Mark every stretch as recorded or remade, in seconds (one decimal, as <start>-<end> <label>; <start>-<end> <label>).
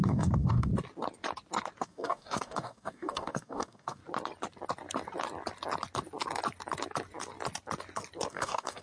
0.0-0.7 remade; 0.7-1.8 recorded; 1.8-4.0 remade; 4.0-8.3 recorded; 8.3-8.8 remade